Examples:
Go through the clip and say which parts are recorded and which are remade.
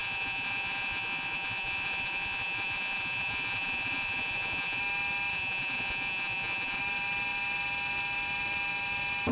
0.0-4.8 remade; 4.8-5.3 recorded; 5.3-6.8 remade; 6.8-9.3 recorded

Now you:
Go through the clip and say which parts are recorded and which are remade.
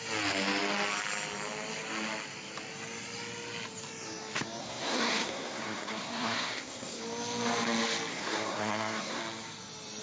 0.0-4.6 recorded; 4.6-7.0 remade; 7.0-8.1 recorded; 8.1-9.2 remade; 9.2-10.0 recorded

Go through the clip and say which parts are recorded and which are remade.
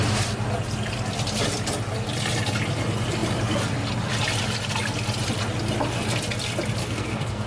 0.0-6.8 recorded; 6.8-7.5 remade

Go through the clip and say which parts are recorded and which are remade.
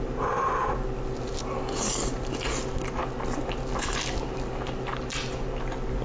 0.0-1.3 recorded; 1.3-2.0 remade; 2.0-6.0 recorded